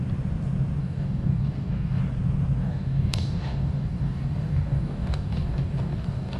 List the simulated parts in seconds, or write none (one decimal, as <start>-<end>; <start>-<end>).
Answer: 0.8-2.0; 2.6-6.4

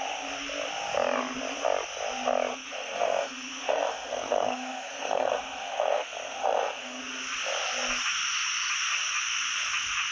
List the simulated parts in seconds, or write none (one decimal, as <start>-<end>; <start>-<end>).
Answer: 2.5-7.0

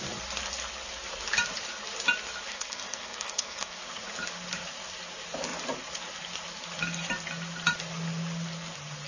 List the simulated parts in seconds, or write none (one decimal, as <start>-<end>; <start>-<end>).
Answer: 2.5-3.8

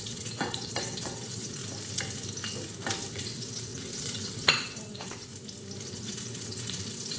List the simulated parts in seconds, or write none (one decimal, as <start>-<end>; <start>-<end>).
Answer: 0.0-1.6; 3.1-5.3; 5.9-7.2

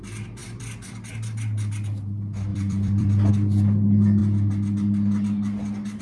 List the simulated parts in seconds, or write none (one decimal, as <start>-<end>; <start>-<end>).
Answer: 0.4-0.9; 2.5-3.3